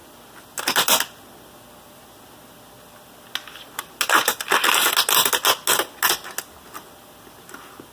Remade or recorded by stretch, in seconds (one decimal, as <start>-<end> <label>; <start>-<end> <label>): 0.0-7.9 recorded